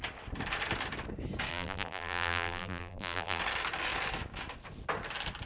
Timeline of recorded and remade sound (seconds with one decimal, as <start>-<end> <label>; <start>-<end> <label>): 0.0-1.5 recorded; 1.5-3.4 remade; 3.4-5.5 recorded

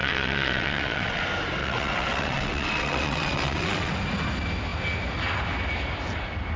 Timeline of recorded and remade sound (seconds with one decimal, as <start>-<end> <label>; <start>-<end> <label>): 0.0-1.2 remade; 1.2-1.6 recorded; 1.6-3.9 remade; 3.9-6.6 recorded

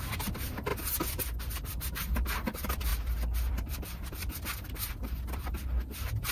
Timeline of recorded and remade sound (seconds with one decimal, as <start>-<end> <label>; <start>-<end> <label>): 0.0-0.7 remade; 0.7-1.4 recorded; 1.4-2.9 remade; 2.9-3.5 recorded; 3.5-6.3 remade

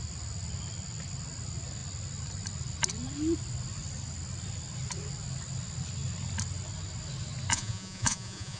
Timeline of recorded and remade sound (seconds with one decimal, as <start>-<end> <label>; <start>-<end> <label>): 0.0-7.5 recorded; 7.5-8.6 remade